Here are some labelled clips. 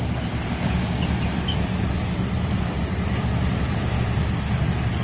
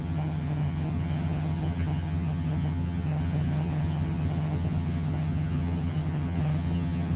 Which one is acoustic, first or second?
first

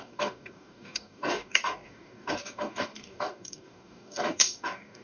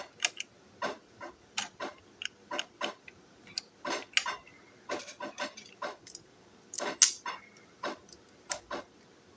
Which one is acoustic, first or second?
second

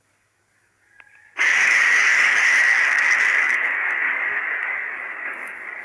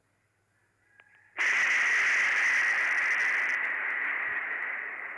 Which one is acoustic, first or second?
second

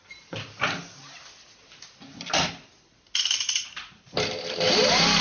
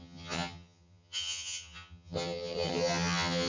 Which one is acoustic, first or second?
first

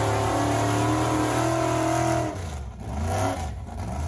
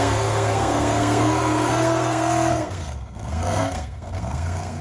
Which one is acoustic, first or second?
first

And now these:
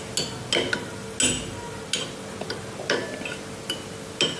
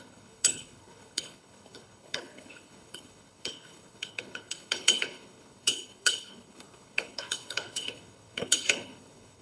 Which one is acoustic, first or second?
first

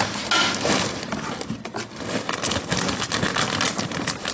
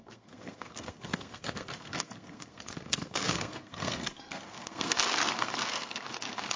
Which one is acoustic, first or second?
first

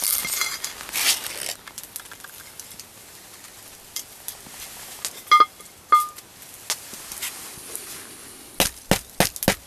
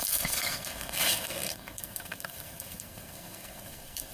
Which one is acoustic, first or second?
first